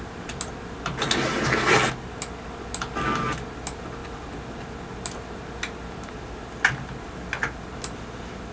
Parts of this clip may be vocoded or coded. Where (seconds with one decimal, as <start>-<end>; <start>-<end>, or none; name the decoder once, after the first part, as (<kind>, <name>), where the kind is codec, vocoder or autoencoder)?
none